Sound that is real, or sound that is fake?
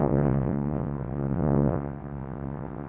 fake